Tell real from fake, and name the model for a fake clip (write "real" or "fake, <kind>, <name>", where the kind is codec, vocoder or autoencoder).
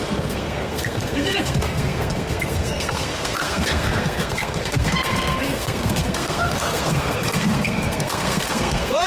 fake, codec, SNAC